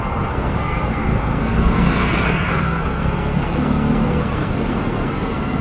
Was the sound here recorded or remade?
remade